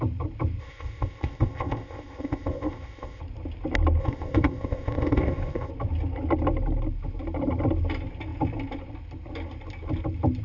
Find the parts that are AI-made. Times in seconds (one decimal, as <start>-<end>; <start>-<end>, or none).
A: 0.6-3.2; 4.0-5.7